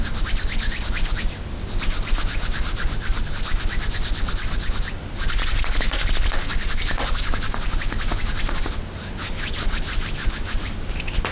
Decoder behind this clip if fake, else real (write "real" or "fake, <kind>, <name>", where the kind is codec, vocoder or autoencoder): real